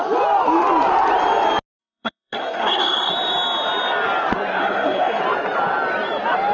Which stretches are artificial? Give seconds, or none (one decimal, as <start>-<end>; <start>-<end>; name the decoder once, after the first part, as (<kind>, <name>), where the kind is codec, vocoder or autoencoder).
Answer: 1.8-3.1 (codec, SNAC); 4.6-5.2